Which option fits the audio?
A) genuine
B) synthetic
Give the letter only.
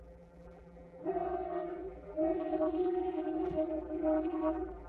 B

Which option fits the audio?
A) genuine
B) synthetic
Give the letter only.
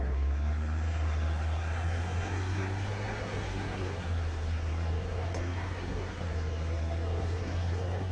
B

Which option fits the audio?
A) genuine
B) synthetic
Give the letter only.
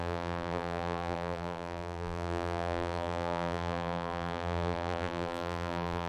B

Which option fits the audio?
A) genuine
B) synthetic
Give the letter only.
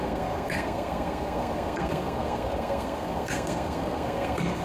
B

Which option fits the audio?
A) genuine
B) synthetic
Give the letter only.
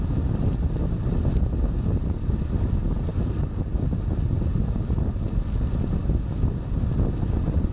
A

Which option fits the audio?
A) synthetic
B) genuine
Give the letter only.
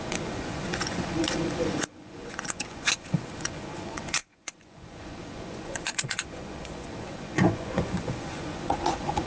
A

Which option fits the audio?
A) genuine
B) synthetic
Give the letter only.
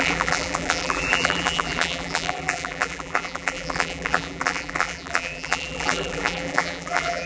B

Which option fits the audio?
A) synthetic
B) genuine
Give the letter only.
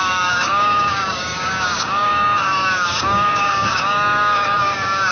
A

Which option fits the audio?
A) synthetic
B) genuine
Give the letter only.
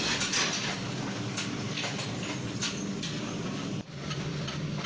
B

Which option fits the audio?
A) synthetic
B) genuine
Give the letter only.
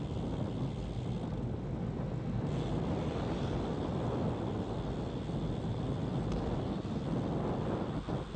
B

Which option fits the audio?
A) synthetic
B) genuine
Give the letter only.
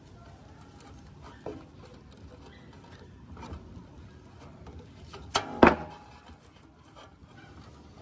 B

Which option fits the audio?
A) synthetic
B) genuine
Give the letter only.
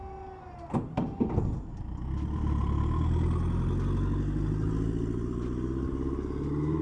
B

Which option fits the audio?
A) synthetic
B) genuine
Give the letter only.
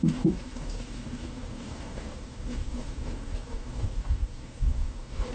A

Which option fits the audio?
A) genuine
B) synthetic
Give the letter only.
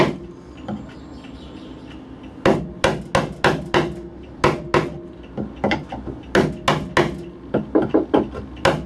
A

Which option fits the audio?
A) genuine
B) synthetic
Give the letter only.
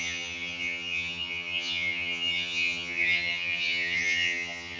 B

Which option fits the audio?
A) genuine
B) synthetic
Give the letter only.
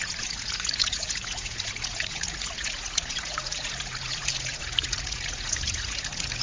B